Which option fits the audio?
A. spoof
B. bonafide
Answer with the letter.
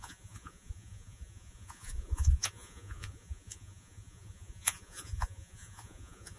A